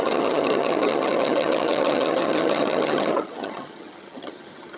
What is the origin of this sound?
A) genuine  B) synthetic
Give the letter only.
B